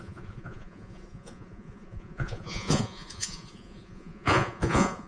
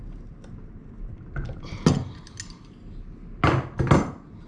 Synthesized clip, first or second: first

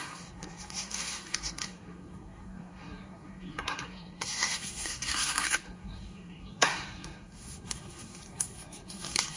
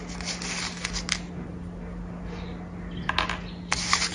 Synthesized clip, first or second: first